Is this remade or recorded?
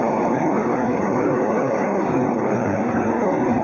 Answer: remade